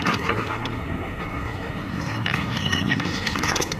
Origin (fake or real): fake